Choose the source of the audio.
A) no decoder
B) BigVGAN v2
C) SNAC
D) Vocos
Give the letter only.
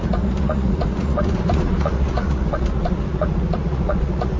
D